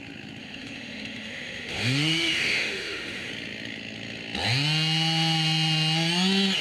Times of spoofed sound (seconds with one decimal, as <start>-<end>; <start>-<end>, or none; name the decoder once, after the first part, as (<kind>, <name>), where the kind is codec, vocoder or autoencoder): 0.4-3.3 (autoencoder, DAC-VAE)

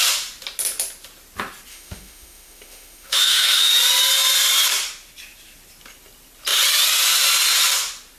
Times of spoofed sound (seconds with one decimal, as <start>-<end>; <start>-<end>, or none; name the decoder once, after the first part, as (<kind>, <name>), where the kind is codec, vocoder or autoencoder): 1.7-3.7 (autoencoder, DAC-VAE)

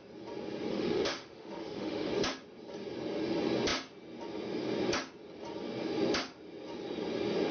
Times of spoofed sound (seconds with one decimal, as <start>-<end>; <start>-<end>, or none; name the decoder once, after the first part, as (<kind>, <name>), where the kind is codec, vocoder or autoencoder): 0.7-2.1 (autoencoder, DAC-VAE)

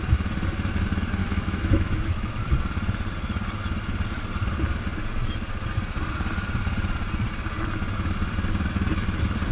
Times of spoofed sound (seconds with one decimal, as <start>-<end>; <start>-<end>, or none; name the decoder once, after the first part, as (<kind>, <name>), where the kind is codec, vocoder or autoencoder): 1.2-2.3 (autoencoder, DAC-VAE)

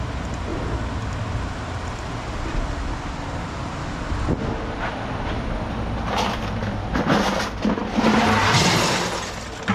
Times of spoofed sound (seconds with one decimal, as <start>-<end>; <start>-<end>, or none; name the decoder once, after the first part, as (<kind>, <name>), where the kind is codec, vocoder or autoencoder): none

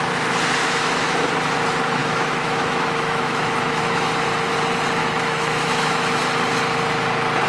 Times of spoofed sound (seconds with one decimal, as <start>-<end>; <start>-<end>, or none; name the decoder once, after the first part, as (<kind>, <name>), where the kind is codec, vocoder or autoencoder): 0.6-1.3 (autoencoder, DAC-VAE); 2.0-4.1; 5.0-6.2

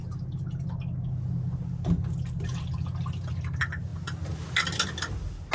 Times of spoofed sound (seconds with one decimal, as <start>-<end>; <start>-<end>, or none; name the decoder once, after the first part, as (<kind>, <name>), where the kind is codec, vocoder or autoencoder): none